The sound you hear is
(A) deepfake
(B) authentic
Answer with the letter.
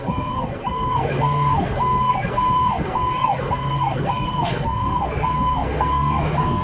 A